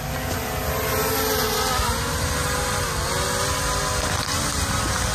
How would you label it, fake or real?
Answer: real